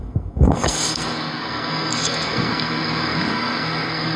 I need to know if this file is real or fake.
fake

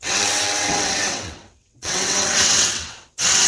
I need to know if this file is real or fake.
fake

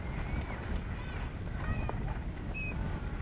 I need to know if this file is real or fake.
real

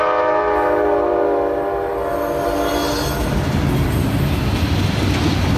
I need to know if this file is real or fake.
real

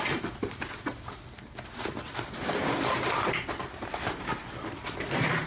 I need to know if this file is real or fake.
fake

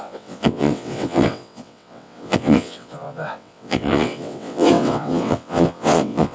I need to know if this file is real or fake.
fake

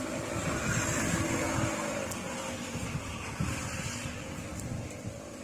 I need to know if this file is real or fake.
real